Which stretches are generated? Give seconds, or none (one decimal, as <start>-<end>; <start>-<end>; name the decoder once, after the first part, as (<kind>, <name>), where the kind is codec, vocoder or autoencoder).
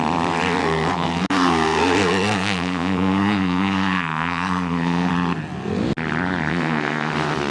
0.6-5.1 (codec, SNAC); 6.5-7.1